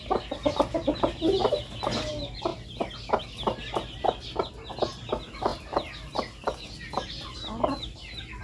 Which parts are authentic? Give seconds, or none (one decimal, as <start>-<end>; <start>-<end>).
0.0-8.4